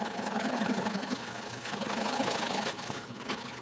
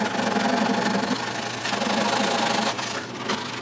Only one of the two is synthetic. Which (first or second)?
first